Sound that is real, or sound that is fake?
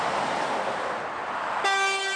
real